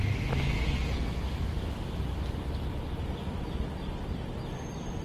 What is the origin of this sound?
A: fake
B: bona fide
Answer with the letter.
B